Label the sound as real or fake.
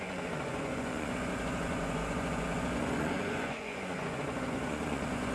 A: fake